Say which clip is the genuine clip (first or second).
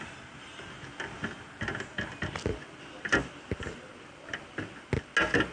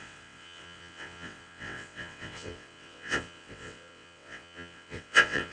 first